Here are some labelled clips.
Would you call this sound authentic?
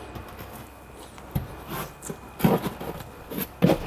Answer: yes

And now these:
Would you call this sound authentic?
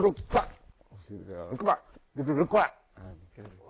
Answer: no